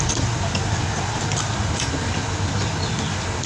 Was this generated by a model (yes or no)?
no